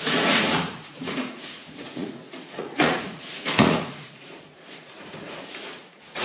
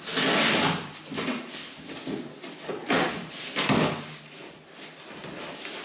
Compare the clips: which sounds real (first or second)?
second